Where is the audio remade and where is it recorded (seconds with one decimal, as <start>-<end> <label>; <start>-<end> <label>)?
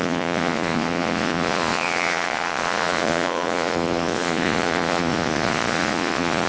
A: 0.0-6.5 remade